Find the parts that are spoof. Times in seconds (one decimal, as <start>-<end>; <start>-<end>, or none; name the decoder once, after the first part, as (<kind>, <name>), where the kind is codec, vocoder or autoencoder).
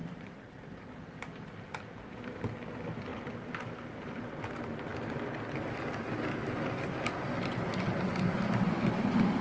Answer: 0.0-1.1 (vocoder, BigVGAN v2); 3.1-4.4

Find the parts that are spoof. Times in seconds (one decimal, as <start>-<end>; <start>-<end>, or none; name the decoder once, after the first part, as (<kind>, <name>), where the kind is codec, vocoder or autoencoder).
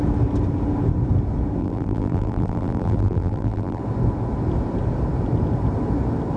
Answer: 1.6-3.8 (vocoder, BigVGAN v2)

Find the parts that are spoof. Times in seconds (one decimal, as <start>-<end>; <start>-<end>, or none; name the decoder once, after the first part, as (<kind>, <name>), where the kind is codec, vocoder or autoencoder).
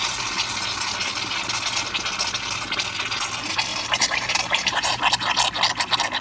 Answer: 3.7-5.0 (vocoder, BigVGAN v2)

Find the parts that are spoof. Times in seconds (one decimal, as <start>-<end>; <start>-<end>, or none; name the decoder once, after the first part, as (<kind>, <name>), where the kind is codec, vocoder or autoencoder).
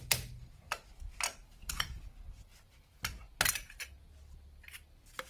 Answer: 1.6-3.0 (vocoder, BigVGAN v2)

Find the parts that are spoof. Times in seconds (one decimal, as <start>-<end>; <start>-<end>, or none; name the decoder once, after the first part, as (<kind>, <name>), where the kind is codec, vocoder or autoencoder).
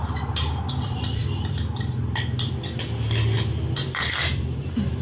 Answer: 0.7-1.2 (vocoder, BigVGAN v2); 4.2-5.0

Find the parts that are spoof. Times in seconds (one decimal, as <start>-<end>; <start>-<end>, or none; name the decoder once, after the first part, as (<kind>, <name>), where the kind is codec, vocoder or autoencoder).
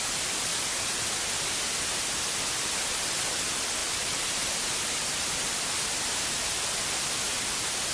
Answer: none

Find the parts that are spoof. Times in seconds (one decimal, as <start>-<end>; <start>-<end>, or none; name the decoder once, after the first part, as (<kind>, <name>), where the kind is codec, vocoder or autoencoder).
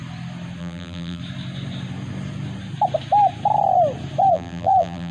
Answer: 0.6-1.2 (vocoder, BigVGAN v2); 4.3-5.1